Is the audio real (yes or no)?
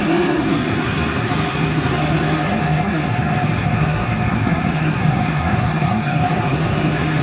no